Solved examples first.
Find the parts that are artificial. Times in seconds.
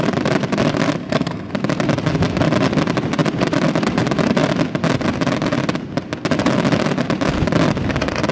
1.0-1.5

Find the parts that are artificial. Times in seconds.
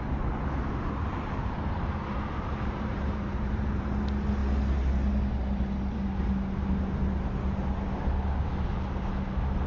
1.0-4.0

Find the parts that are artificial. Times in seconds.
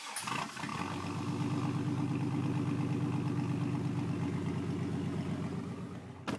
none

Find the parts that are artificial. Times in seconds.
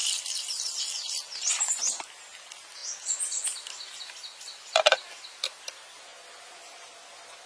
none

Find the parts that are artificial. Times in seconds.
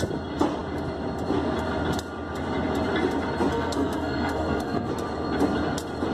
3.5-4.9